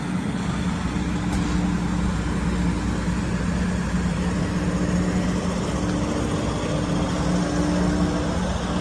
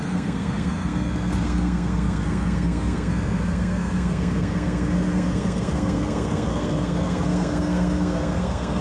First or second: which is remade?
second